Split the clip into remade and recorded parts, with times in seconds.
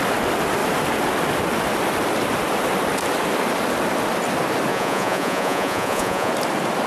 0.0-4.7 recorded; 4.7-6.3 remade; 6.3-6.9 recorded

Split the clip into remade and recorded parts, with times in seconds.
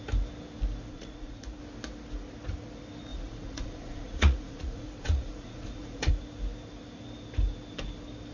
0.0-0.9 recorded; 0.9-1.6 remade; 1.6-3.1 recorded; 3.1-6.1 remade; 6.1-8.3 recorded